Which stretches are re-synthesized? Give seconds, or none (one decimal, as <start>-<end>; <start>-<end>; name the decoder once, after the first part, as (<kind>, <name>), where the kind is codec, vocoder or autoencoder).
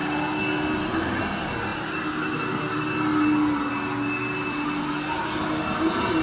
none